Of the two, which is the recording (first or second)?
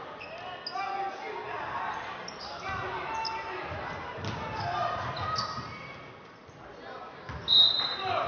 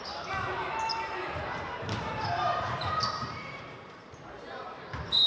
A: first